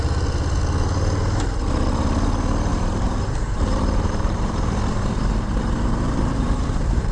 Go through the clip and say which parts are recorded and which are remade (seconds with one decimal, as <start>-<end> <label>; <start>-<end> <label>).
0.0-2.7 recorded; 2.7-7.1 remade